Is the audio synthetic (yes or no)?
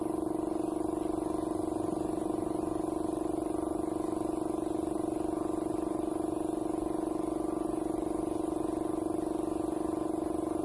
no